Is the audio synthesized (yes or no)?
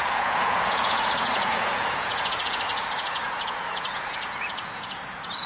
yes